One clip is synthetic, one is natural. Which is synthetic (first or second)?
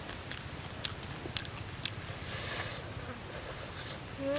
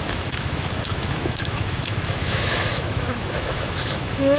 second